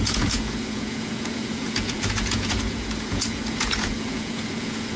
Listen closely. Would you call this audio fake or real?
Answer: fake